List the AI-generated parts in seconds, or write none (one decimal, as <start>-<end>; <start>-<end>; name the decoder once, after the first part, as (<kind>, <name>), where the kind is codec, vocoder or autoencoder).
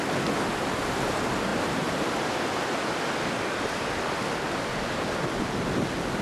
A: none